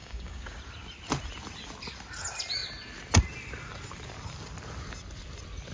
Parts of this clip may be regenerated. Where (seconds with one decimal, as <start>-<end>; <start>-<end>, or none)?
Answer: 0.0-0.6